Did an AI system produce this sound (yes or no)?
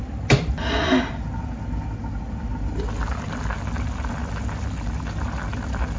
no